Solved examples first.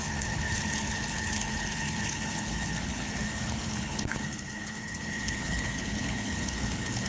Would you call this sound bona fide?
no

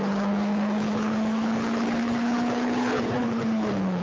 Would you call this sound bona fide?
no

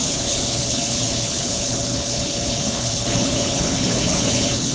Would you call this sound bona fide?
no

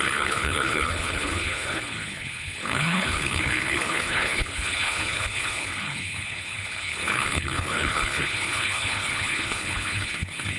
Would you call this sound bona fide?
no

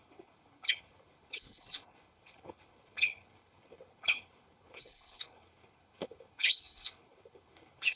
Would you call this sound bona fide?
no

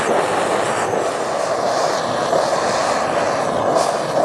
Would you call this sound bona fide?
yes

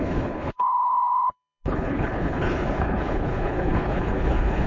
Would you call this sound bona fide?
no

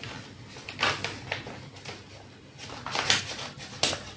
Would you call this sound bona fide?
yes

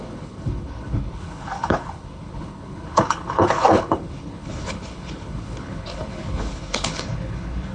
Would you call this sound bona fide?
no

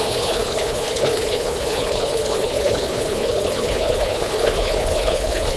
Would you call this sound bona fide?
no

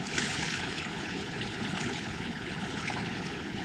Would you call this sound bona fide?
no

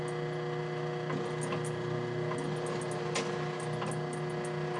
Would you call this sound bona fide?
yes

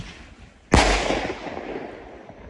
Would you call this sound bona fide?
yes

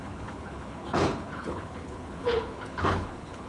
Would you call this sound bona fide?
no